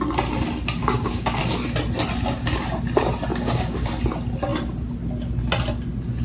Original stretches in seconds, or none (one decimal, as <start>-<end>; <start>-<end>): 0.0-0.8; 1.4-3.3; 3.9-6.2